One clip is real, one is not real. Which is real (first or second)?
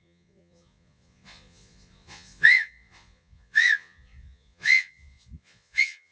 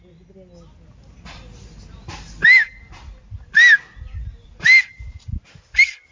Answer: second